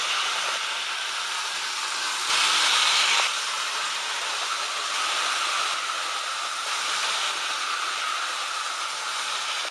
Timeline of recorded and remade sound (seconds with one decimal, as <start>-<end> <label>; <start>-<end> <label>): 0.0-9.7 recorded